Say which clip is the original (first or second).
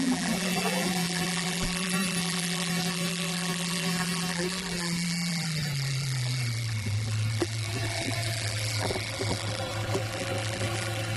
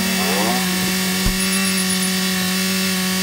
second